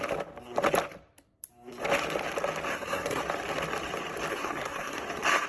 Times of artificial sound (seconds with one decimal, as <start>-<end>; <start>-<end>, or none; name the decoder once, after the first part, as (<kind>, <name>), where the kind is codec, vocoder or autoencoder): 2.7-3.2 (codec, SNAC); 4.3-5.0